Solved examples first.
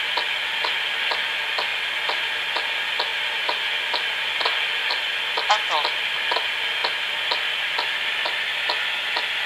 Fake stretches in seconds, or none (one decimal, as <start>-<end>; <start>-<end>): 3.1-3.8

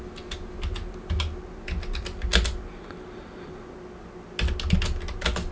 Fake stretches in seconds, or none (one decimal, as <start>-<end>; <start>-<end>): none

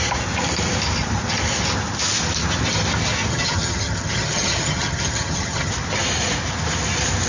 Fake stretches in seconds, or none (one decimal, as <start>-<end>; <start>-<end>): 3.3-5.7

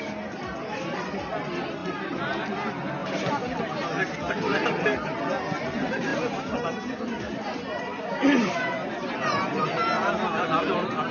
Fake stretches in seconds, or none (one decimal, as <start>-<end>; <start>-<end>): none

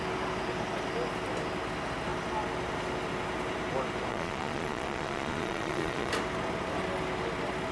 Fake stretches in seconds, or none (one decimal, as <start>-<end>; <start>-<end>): 4.1-6.1

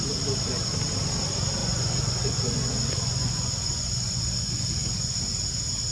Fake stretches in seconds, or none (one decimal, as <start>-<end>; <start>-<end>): 1.6-5.1

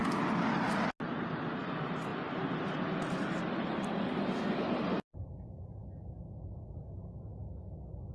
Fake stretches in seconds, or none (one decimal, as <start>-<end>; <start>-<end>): none